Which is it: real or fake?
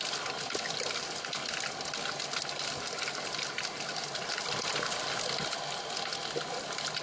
real